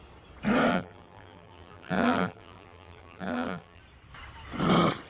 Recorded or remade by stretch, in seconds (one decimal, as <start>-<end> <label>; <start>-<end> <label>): 0.0-0.7 recorded; 0.7-3.8 remade; 3.8-5.1 recorded